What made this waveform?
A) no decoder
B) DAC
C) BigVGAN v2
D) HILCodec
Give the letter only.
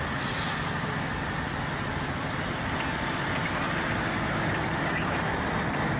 A